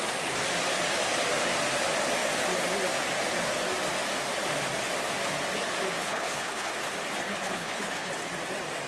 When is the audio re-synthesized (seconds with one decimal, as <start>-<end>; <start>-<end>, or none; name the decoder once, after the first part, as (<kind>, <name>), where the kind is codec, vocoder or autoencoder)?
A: 6.0-6.7 (codec, HILCodec); 7.2-8.1